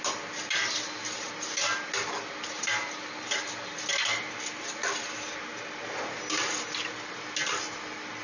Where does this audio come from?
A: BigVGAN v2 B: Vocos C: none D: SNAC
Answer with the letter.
C